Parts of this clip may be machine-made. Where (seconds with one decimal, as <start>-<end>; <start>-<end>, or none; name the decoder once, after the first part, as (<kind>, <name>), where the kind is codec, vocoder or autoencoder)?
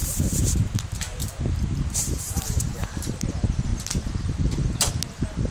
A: 0.0-3.3 (vocoder, BigVGAN v2); 3.7-4.9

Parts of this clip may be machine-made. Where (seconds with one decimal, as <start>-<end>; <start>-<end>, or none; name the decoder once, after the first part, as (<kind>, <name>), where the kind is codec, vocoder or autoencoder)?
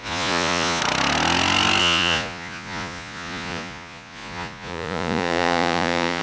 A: 0.0-0.8 (vocoder, Vocos); 1.8-6.2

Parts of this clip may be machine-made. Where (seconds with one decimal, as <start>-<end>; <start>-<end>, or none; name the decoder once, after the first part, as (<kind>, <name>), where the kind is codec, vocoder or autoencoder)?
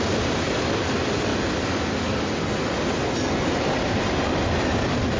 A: 0.0-1.3 (vocoder, BigVGAN v2); 3.4-5.2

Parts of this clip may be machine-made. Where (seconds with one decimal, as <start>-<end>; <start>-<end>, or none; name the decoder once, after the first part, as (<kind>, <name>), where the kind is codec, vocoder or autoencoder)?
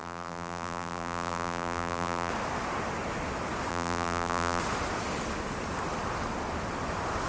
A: 0.0-2.3 (vocoder, BigVGAN v2); 3.7-4.6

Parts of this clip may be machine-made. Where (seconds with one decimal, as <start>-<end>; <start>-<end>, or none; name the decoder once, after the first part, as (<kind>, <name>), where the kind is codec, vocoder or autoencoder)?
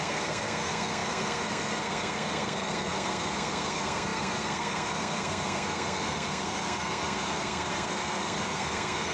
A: 0.0-9.1 (codec, SNAC)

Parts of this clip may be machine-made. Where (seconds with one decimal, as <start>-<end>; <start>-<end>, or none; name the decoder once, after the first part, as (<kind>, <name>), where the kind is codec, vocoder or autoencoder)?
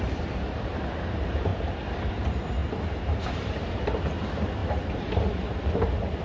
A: 0.0-1.5 (vocoder, BigVGAN v2); 2.1-2.6; 3.2-6.2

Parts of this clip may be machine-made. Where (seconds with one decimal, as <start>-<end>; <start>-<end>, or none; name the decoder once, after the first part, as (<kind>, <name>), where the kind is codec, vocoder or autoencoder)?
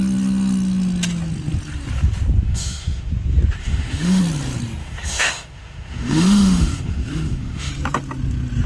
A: 2.5-3.1 (autoencoder, DAC-VAE); 3.6-4.2; 4.8-7.7